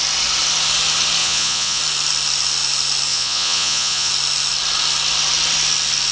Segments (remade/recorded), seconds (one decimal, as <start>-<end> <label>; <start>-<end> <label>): 0.0-1.2 recorded; 1.2-1.8 remade; 1.8-3.1 recorded; 3.1-4.1 remade; 4.1-6.1 recorded